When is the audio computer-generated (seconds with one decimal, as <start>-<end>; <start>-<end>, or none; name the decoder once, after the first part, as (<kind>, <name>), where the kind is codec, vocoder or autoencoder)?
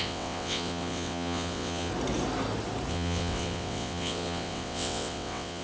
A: 0.0-1.9 (vocoder, WaveNeXt); 2.9-5.6